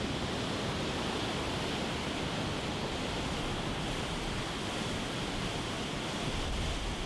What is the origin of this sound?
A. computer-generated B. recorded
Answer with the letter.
B